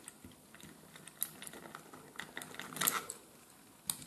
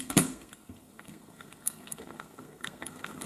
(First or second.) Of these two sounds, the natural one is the first